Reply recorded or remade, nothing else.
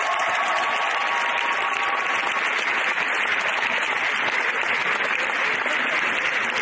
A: recorded